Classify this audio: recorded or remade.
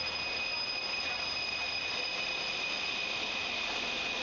recorded